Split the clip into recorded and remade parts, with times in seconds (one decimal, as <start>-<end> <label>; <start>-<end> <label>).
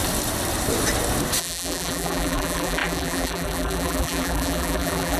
0.0-1.4 recorded; 1.4-5.2 remade